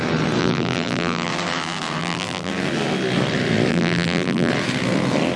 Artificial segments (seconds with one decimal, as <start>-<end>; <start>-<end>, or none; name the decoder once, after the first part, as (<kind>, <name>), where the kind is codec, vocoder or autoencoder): 0.4-1.3 (vocoder, BigVGAN v2); 2.0-2.5; 3.7-4.5